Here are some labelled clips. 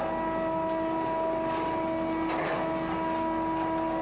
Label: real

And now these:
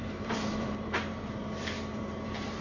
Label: fake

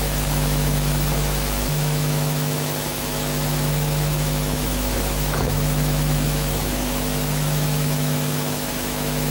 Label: fake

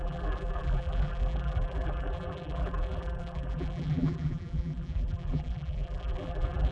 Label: fake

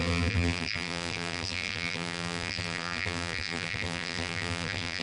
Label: fake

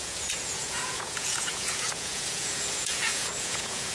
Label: fake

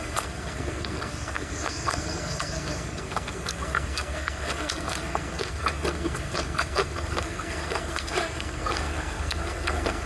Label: fake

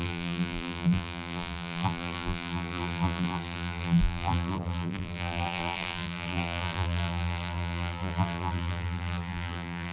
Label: fake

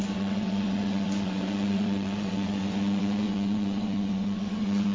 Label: fake